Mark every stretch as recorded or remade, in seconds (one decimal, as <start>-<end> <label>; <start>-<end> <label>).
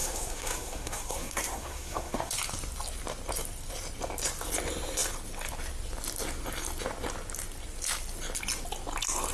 0.0-2.3 remade; 2.3-9.3 recorded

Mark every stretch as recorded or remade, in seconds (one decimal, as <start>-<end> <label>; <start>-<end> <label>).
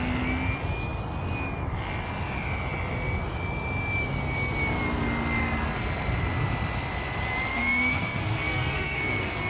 0.0-7.5 recorded; 7.5-9.5 remade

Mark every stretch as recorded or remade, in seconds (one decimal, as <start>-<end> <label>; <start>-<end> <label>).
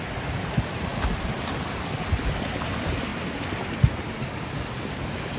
0.0-3.1 remade; 3.1-4.6 recorded; 4.6-5.4 remade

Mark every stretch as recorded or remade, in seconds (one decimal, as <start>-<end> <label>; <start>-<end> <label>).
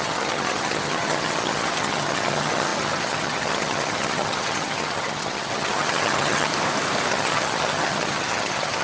0.0-6.5 remade; 6.5-7.1 recorded; 7.1-8.8 remade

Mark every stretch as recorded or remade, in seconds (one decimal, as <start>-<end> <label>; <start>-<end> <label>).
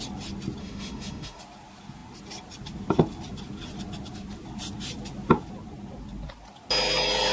0.0-0.6 recorded; 0.6-1.4 remade; 1.4-7.3 recorded